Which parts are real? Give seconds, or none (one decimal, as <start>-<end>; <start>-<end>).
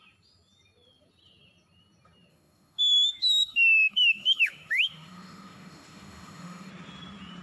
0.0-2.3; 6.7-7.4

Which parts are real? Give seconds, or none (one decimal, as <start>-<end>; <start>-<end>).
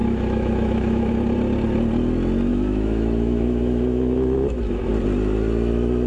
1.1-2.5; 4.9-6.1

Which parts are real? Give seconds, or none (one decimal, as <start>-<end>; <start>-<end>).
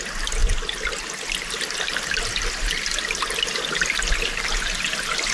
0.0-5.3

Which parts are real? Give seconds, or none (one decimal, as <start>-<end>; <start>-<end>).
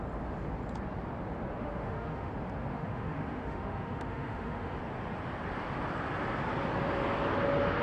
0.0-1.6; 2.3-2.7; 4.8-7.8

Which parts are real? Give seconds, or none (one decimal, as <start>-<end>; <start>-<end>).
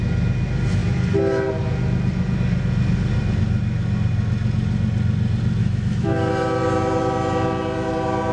0.0-5.6; 6.3-8.3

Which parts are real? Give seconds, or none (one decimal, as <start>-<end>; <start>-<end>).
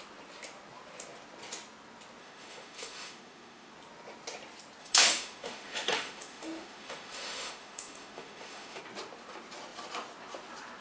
0.0-2.2; 3.7-4.8; 8.8-10.8